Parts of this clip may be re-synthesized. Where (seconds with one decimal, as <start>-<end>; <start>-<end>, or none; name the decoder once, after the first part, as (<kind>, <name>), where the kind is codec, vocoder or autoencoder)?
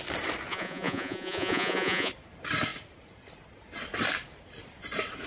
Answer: 0.5-2.1 (vocoder, Vocos)